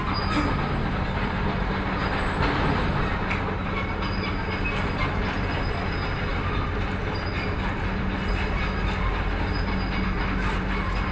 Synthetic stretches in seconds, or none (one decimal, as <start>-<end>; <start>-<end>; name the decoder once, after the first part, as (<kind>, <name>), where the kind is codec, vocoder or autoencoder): none